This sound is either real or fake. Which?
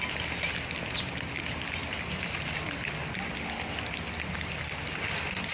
real